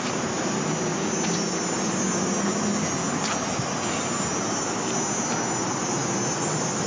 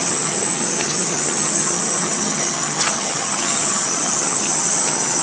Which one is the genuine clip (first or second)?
first